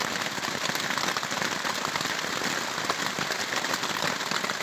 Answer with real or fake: real